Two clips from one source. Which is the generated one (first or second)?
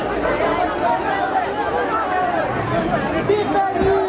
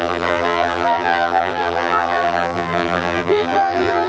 second